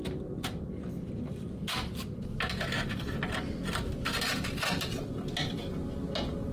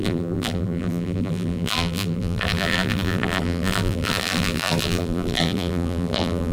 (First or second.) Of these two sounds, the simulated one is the second